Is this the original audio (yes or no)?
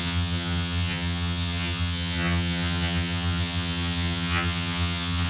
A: no